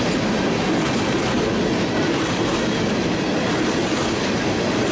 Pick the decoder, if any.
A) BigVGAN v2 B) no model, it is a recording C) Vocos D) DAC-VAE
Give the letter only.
B